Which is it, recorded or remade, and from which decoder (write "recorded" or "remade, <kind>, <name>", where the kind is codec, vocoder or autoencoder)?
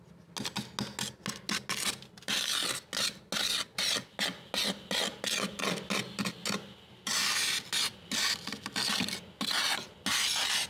recorded